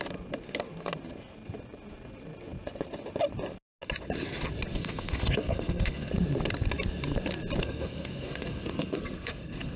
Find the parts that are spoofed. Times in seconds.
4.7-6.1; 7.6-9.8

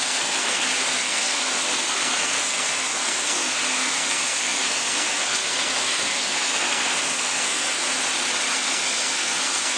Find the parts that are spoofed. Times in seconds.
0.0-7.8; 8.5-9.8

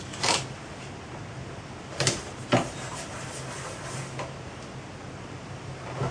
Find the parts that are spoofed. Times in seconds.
none

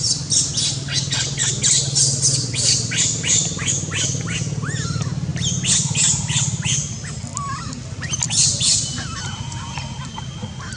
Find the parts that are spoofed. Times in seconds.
none